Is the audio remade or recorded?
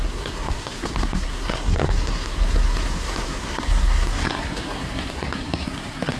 remade